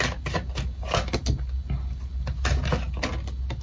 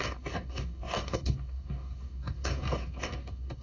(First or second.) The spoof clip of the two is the second